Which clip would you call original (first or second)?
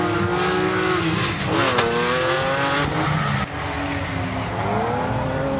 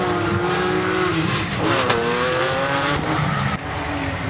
first